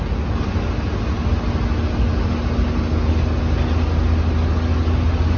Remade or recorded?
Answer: recorded